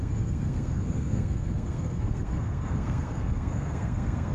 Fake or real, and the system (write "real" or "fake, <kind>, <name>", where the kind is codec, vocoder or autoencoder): fake, codec, SNAC